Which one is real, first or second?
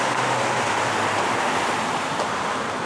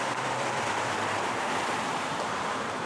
first